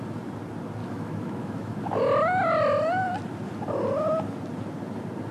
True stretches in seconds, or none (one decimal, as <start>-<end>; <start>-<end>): 0.0-0.8; 2.0-5.3